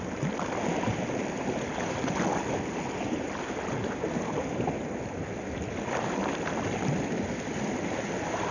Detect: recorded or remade recorded